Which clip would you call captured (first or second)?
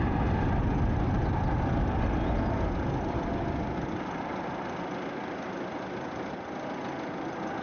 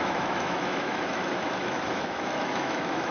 first